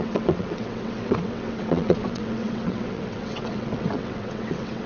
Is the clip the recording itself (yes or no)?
no